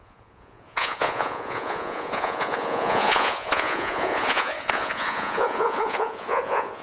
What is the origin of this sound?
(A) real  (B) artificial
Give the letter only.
B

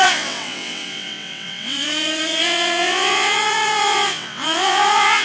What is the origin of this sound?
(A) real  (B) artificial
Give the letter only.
B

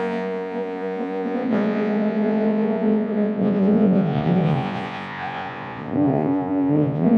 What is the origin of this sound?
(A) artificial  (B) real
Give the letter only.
A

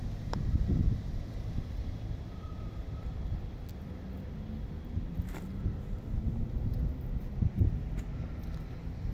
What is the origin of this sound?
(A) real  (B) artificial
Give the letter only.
A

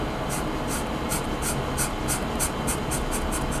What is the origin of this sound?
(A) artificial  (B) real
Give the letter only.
B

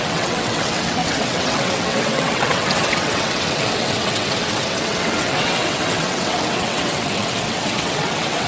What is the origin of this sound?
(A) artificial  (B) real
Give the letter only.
A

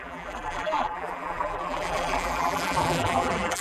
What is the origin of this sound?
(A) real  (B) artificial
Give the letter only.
B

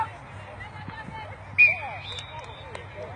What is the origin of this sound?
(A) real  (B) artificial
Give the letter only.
A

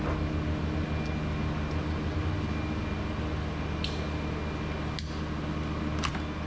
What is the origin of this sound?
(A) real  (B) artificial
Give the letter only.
A